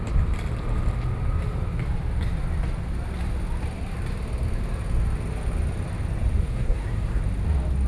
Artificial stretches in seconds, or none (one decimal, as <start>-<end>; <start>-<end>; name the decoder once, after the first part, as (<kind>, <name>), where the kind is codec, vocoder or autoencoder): 6.4-7.2 (codec, SNAC)